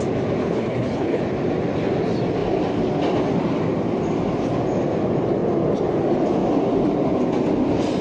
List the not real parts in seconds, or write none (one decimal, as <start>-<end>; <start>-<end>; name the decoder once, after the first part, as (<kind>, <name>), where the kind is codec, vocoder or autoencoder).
0.4-1.2 (codec, HILCodec)